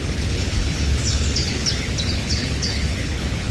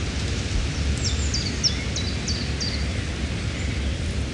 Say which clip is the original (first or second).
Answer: second